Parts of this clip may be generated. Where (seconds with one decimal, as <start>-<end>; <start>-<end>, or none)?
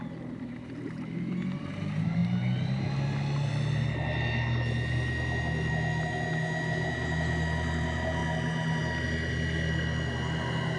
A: none